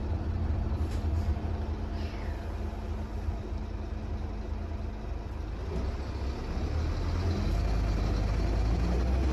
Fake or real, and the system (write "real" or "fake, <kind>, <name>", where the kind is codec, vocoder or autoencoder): real